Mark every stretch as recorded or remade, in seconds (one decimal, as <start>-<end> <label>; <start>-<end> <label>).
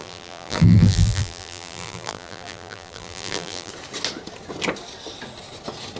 0.0-3.7 remade; 3.7-6.0 recorded